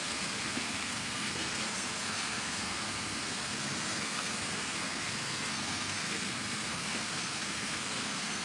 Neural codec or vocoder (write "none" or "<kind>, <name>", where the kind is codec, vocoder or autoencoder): codec, SNAC